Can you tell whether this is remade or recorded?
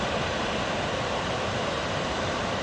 remade